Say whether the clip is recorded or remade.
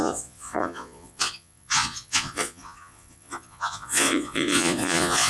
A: remade